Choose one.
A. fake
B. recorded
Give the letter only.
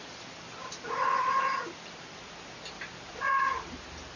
B